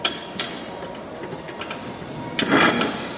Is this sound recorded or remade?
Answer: recorded